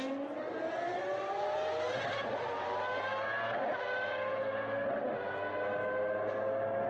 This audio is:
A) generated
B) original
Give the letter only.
B